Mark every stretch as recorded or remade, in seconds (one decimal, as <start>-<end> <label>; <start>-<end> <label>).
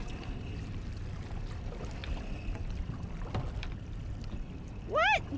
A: 0.0-5.4 recorded